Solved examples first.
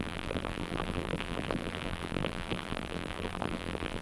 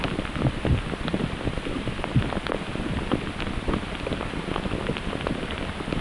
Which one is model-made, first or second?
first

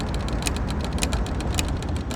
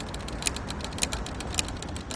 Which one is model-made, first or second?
second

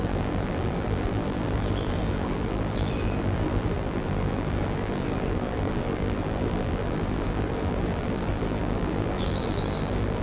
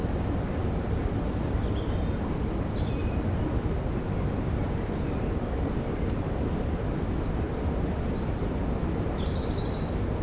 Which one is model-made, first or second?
first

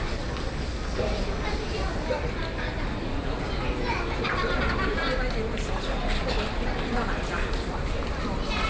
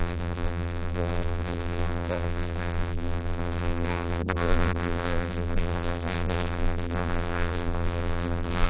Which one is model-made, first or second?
second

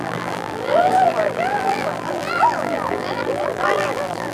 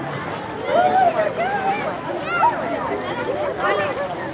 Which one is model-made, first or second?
first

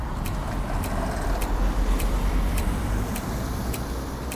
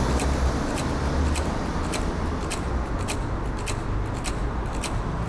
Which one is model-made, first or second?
first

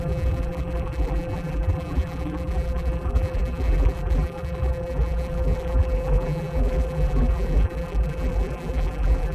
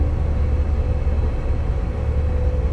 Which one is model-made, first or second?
first